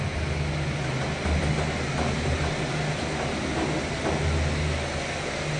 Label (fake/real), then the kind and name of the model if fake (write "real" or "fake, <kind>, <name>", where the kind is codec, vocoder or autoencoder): real